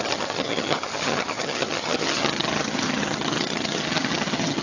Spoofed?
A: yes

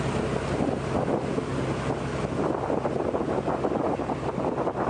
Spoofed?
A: no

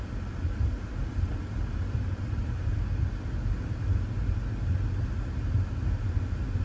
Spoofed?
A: no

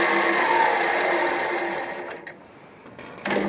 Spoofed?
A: no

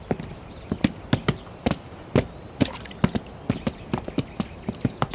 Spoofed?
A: no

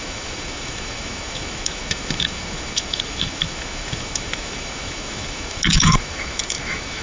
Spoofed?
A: yes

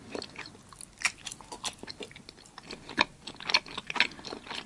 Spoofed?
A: no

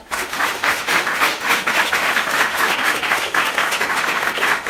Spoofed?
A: yes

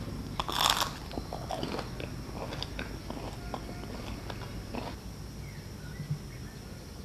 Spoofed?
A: no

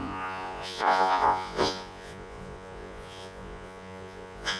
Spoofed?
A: yes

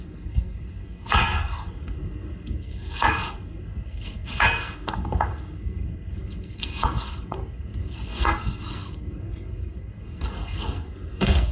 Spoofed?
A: yes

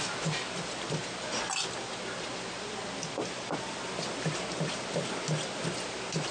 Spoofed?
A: no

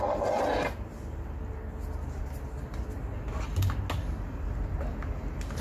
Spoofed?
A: no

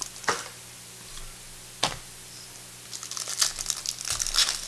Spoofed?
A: no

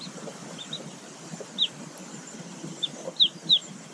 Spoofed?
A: yes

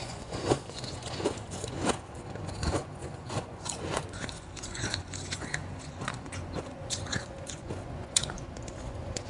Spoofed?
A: yes